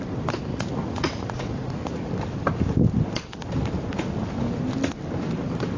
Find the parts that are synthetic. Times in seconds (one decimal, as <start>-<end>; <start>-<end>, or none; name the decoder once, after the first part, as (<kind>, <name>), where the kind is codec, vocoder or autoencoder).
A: 0.5-2.1 (vocoder, Vocos)